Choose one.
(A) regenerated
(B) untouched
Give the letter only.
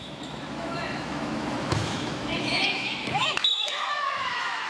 A